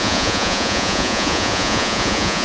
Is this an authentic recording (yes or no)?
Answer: no